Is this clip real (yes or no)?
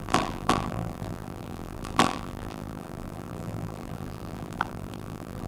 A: no